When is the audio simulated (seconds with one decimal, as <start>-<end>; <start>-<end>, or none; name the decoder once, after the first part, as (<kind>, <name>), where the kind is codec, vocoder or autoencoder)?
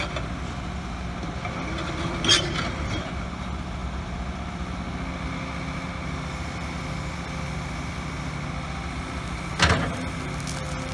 none